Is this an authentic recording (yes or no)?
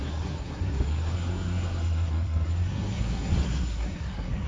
no